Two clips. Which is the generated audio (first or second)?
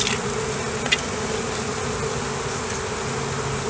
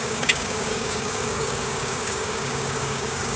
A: second